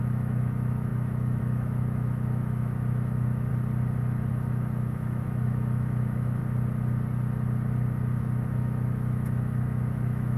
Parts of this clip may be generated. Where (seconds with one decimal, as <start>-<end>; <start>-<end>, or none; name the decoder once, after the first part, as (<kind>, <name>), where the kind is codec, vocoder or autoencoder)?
0.0-3.5 (autoencoder, DAC-VAE); 4.3-6.4; 8.2-10.4